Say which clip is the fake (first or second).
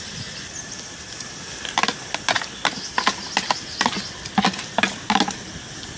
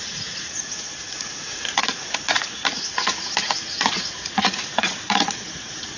second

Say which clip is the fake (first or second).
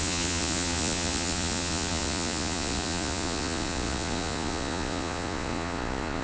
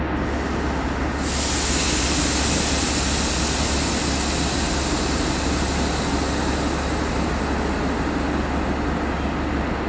first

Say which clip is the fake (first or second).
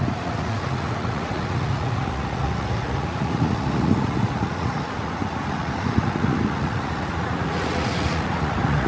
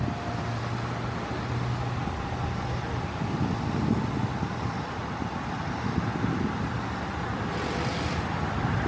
first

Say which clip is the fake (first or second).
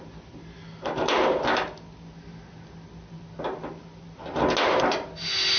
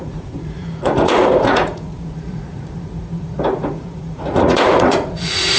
second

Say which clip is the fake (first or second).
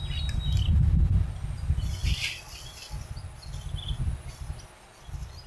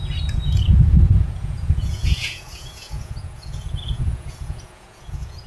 second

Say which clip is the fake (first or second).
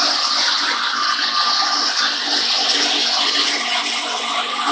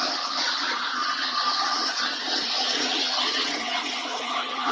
second